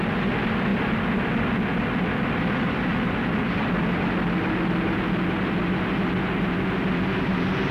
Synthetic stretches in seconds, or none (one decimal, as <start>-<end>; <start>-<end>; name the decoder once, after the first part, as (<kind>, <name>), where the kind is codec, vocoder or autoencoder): 0.7-2.9 (vocoder, BigVGAN v2)